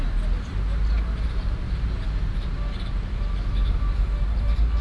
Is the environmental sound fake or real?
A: real